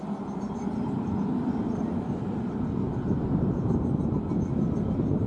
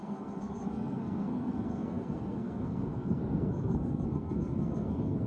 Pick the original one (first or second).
first